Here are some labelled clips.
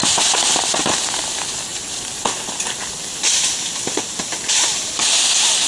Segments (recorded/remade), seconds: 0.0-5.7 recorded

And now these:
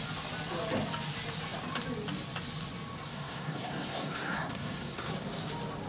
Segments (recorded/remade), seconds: 0.0-3.1 recorded; 3.1-5.1 remade; 5.1-5.9 recorded

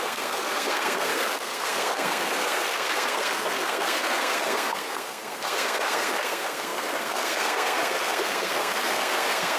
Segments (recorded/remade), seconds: 0.0-9.6 remade

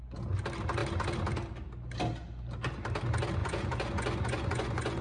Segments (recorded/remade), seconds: 0.0-3.4 recorded; 3.4-5.0 remade

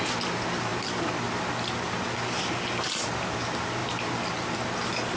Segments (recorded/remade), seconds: 0.0-5.2 recorded